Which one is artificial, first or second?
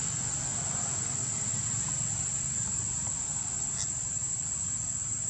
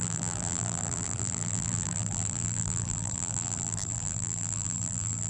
second